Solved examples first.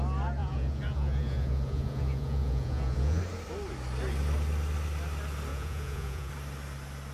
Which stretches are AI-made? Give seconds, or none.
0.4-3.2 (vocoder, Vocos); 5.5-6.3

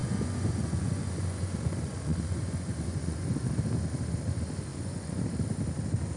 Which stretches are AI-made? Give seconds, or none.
0.0-3.5 (vocoder, Vocos); 4.7-5.2

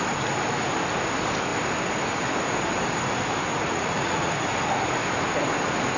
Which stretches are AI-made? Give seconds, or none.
3.5-4.3 (vocoder, Vocos)

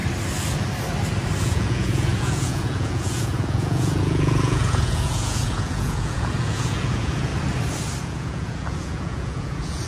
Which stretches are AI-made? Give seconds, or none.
1.4-7.3 (vocoder, Vocos); 8.0-9.9